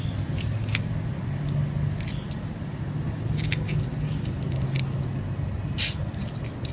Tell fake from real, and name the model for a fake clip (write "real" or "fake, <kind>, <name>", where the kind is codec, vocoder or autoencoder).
real